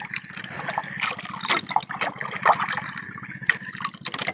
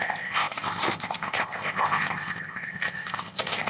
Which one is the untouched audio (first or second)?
first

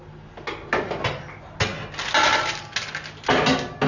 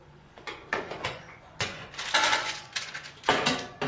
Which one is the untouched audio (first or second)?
first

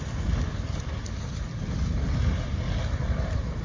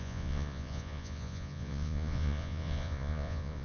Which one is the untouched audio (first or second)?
first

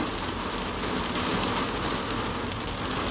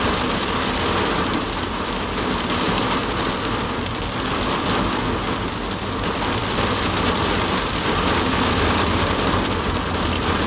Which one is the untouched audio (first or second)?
first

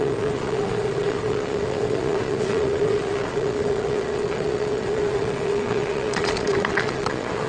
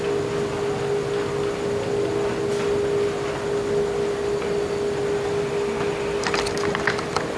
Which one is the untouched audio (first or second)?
second